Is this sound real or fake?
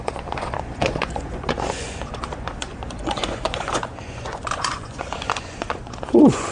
fake